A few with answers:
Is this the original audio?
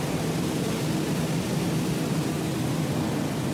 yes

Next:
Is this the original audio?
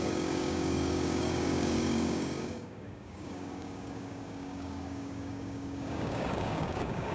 no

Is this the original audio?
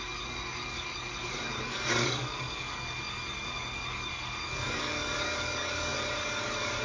no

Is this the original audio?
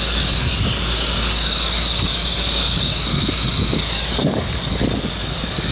no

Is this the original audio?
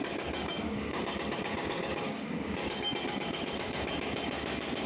no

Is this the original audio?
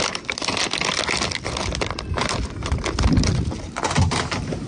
yes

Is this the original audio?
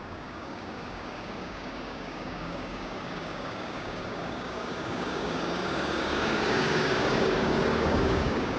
no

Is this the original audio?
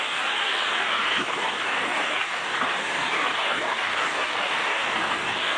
no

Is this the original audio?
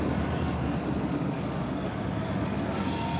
no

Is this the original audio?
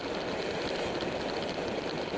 yes